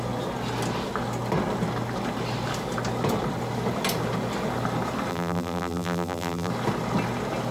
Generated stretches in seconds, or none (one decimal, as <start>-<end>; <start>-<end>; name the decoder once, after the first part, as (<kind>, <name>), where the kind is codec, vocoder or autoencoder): 5.1-6.5 (vocoder, BigVGAN v2)

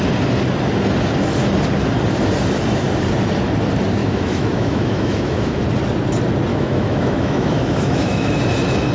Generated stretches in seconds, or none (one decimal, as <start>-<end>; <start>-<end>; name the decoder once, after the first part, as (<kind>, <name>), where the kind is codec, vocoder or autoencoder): 4.0-5.6 (autoencoder, DAC-VAE); 6.5-8.4

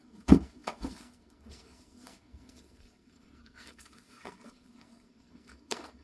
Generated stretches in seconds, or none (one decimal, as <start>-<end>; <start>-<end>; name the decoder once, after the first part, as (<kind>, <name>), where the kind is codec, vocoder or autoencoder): 0.0-6.0 (codec, SNAC)

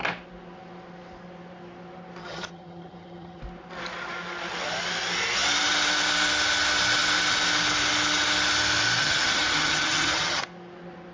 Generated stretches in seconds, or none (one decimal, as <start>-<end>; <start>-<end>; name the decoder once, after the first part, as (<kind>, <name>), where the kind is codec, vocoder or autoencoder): 2.2-3.4 (vocoder, HiFi-GAN); 9.0-10.4

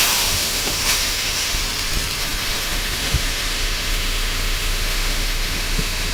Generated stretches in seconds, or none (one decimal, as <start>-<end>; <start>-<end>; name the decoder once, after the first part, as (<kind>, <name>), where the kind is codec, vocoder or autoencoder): 0.0-1.6 (autoencoder, DAC-VAE); 2.2-6.1